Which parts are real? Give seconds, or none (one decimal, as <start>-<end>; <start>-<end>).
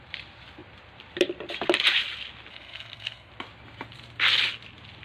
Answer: 0.0-2.5; 3.3-5.0